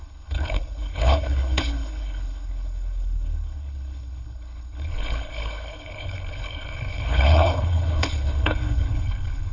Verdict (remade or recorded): remade